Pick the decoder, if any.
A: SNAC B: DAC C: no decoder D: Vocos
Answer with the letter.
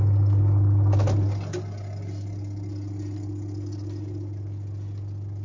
C